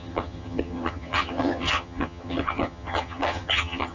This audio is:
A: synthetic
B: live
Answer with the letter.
A